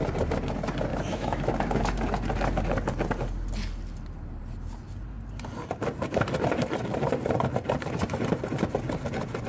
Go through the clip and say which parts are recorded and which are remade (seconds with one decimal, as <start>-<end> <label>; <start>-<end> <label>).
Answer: 0.0-0.9 recorded; 0.9-1.5 remade; 1.5-9.5 recorded

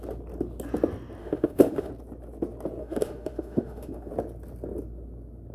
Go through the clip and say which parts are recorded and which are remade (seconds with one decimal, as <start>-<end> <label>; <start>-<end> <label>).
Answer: 0.0-1.2 recorded; 1.2-1.9 remade; 1.9-2.8 recorded; 2.8-4.1 remade; 4.1-5.5 recorded

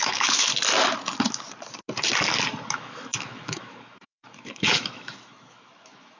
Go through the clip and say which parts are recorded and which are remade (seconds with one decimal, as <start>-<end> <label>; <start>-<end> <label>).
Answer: 0.0-0.5 remade; 0.5-2.7 recorded; 2.7-6.2 remade

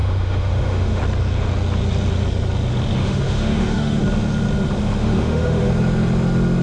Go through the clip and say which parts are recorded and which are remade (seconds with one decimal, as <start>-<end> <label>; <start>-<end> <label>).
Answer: 0.0-1.0 remade; 1.0-3.0 recorded; 3.0-4.0 remade; 4.0-5.0 recorded; 5.0-5.7 remade; 5.7-6.6 recorded